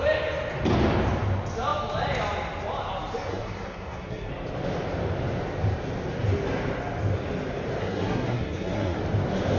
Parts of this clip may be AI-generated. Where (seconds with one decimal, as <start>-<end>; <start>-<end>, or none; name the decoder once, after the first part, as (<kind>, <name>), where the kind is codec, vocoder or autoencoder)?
3.3-4.3 (codec, SNAC); 7.8-9.0